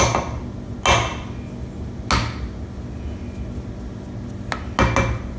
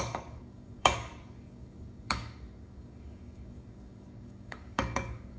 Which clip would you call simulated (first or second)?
second